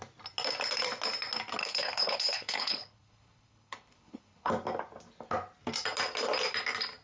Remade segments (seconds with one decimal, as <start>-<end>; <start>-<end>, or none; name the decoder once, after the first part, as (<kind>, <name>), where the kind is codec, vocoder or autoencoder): 1.6-4.5 (codec, HILCodec)